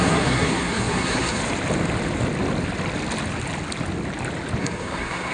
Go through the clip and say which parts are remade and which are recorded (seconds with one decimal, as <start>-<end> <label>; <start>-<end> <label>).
0.0-1.4 remade; 1.4-4.6 recorded; 4.6-5.3 remade